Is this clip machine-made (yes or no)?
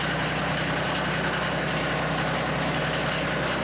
no